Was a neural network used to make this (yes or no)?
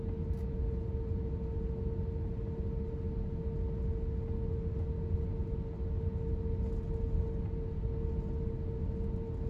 no